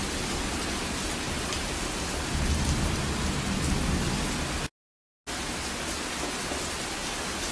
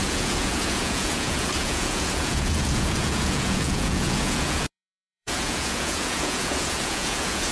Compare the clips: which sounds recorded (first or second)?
first